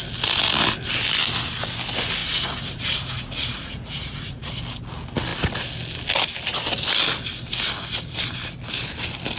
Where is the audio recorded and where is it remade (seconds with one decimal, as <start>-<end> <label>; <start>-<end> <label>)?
0.0-2.2 recorded; 2.2-4.6 remade; 4.6-9.4 recorded